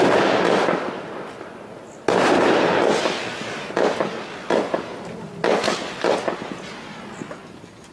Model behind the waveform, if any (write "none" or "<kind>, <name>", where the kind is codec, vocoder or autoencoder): none